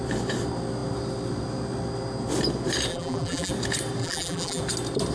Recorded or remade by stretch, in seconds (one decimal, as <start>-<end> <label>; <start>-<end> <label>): 0.0-2.9 recorded; 2.9-3.5 remade; 3.5-4.0 recorded; 4.0-4.6 remade; 4.6-5.1 recorded